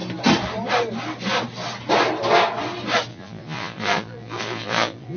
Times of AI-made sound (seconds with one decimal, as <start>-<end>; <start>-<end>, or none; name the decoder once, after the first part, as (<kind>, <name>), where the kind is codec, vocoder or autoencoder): 3.1-5.2 (vocoder, Vocos)